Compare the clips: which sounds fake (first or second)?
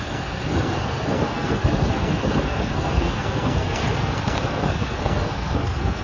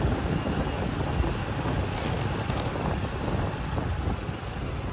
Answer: first